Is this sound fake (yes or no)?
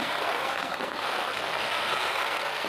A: yes